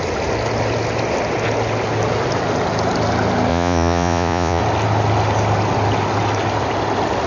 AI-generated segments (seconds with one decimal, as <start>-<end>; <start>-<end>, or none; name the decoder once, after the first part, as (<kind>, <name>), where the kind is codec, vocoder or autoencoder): 3.5-4.6 (vocoder, Vocos)